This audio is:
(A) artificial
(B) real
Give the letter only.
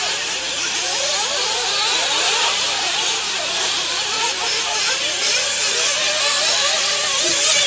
A